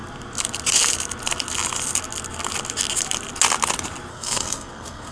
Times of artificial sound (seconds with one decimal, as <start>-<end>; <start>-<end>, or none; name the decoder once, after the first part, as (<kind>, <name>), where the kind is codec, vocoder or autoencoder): 4.1-5.1 (codec, SNAC)